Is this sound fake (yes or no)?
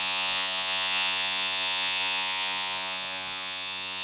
yes